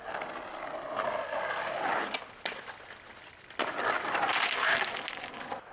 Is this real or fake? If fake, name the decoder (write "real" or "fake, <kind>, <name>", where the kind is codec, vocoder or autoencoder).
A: real